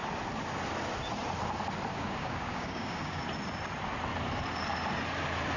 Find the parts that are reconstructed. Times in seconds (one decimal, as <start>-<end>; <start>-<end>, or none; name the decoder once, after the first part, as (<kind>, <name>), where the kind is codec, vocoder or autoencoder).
1.9-3.2 (codec, DAC)